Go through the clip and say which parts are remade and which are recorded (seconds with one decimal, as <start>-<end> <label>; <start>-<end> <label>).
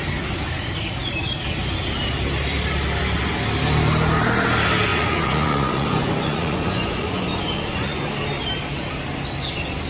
0.0-4.9 recorded; 4.9-8.1 remade; 8.1-9.9 recorded